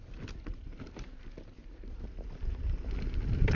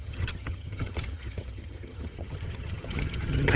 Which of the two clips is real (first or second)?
first